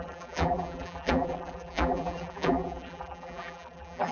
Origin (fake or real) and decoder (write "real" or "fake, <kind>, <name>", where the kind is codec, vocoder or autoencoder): fake, vocoder, BigVGAN v2